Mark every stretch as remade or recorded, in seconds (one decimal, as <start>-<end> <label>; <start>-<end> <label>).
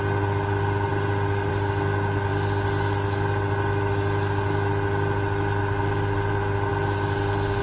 0.0-7.6 recorded